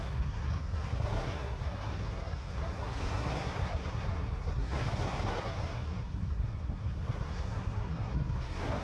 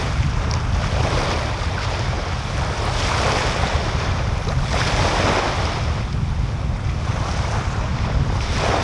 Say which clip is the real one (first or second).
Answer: second